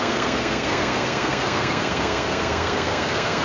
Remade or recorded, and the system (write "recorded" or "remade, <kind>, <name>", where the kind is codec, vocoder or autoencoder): remade, codec, SNAC